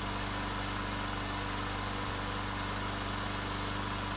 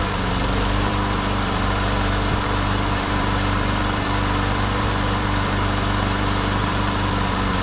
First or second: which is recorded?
first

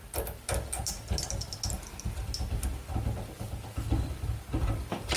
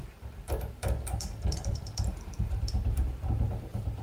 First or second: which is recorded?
first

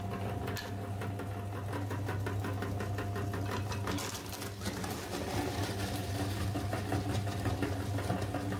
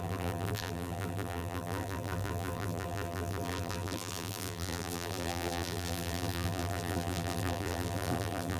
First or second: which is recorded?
first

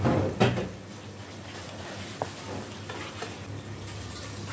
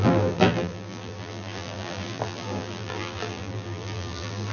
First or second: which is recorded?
first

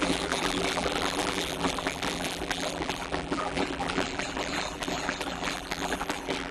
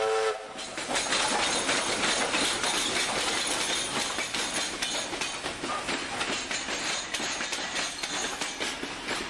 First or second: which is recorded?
second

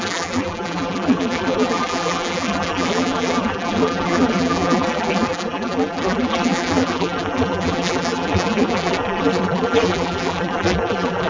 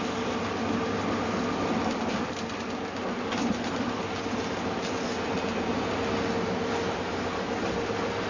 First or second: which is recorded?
second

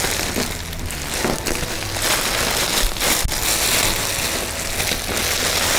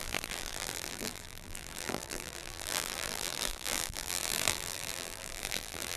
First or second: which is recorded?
first